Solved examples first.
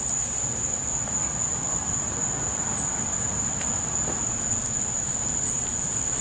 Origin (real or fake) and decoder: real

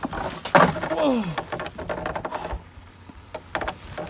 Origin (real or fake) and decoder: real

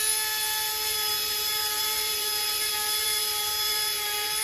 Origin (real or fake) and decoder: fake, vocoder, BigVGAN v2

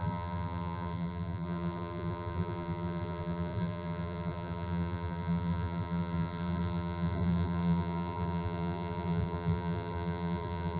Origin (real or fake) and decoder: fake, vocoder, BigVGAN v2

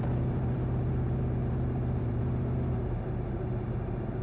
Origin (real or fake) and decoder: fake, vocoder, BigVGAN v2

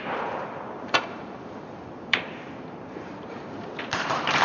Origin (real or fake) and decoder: fake, vocoder, BigVGAN v2